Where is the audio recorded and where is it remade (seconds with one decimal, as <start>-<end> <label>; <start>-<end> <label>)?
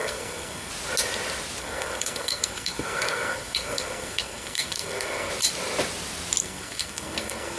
0.0-0.7 remade; 0.7-1.6 recorded; 1.6-5.3 remade; 5.3-6.4 recorded; 6.4-7.6 remade